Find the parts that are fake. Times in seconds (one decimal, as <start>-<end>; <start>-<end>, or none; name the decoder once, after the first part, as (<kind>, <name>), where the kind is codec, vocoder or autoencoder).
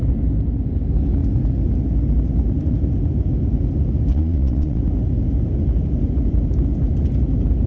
4.1-4.8 (vocoder, Vocos)